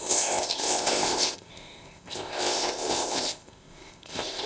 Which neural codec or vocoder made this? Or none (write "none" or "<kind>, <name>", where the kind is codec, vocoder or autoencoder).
codec, ZipCodec